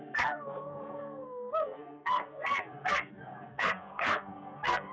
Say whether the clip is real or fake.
fake